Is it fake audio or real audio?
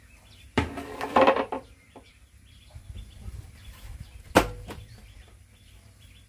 fake